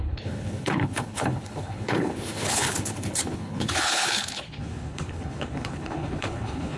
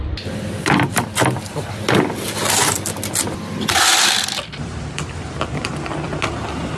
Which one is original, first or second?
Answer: second